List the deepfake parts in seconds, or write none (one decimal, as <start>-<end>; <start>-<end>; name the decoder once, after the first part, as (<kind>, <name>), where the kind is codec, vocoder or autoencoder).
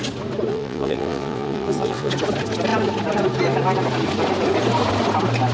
0.5-2.1 (vocoder, WaveNeXt)